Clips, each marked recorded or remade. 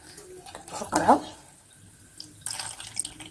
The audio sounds recorded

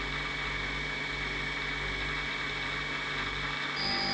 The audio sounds recorded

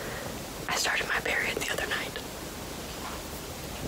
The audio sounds remade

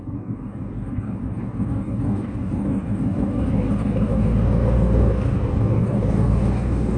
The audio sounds remade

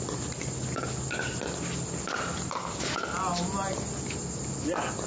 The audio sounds recorded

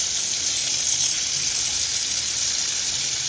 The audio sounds recorded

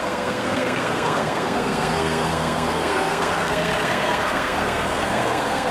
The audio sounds remade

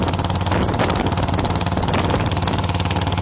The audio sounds recorded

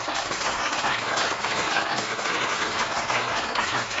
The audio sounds remade